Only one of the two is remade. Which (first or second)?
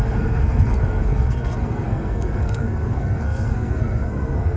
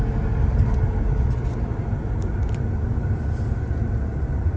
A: first